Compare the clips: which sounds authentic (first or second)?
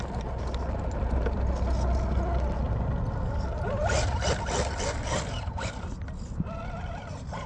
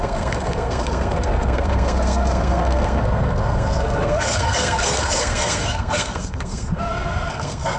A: first